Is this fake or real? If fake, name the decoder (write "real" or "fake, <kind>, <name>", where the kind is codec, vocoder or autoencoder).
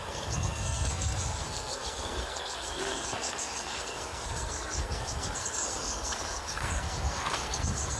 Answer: fake, codec, SNAC